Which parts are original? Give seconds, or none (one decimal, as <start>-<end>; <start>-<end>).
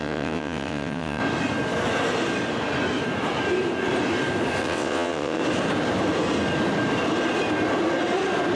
1.2-4.6; 5.4-8.6